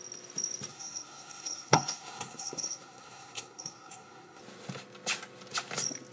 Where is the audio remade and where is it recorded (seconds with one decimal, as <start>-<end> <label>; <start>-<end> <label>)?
0.0-0.7 recorded; 0.7-4.4 remade; 4.4-6.1 recorded